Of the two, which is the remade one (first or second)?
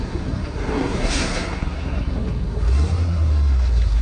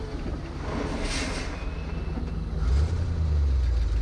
first